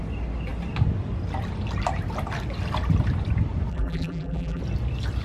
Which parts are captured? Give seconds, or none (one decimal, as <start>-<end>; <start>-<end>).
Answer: 0.0-3.7; 4.6-5.2